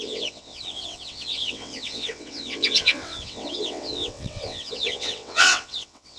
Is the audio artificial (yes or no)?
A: yes